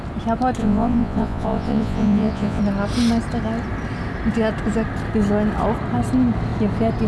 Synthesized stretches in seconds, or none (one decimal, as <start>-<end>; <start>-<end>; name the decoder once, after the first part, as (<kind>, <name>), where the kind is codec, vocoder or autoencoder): 0.6-2.6 (vocoder, Vocos)